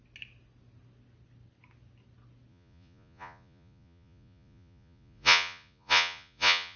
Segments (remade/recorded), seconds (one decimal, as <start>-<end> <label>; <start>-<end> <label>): 0.0-2.5 recorded; 2.5-6.8 remade